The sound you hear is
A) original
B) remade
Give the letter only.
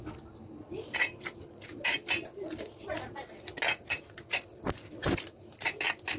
A